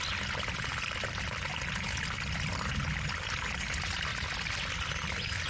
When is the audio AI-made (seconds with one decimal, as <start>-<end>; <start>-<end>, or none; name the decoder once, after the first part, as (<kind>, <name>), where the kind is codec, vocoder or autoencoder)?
none